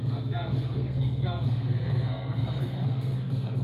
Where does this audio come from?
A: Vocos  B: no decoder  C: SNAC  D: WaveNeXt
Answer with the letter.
C